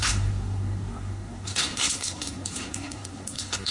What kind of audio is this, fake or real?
fake